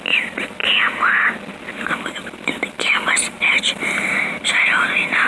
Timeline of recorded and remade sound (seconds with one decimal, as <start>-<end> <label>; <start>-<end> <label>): 0.0-0.6 remade; 0.6-3.3 recorded; 3.3-5.3 remade

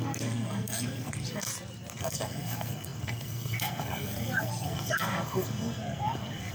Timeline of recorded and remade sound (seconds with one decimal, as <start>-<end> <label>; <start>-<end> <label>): 0.0-1.5 remade; 1.5-2.0 recorded; 2.0-6.5 remade

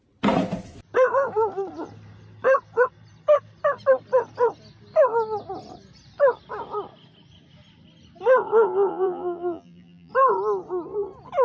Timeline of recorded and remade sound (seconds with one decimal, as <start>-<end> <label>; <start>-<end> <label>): 0.0-8.9 recorded; 8.9-10.1 remade; 10.1-11.4 recorded